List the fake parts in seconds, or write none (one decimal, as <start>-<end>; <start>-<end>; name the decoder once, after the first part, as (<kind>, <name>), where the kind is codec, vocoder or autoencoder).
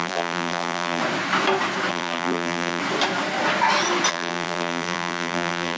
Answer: 0.0-1.0 (vocoder, BigVGAN v2); 1.9-2.8; 4.1-5.8